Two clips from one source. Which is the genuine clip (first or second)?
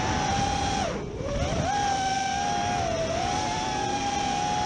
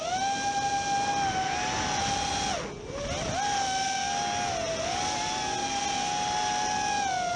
second